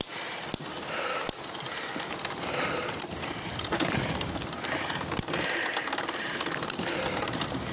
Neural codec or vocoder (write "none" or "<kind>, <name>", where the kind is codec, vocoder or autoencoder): none